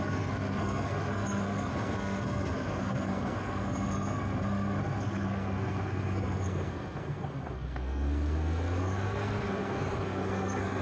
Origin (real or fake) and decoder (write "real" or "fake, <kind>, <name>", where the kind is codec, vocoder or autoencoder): fake, codec, SNAC